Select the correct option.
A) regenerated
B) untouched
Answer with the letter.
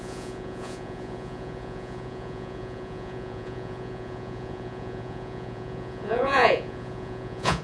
A